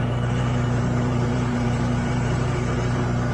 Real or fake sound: fake